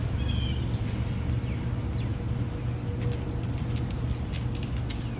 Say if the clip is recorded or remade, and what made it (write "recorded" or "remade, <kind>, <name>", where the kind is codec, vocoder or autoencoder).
recorded